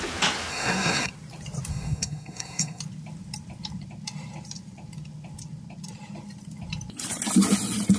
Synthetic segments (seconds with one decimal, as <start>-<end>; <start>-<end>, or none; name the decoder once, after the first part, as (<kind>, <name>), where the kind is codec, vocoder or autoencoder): 0.5-1.1 (codec, SNAC); 1.7-2.8